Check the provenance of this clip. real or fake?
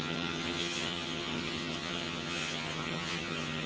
fake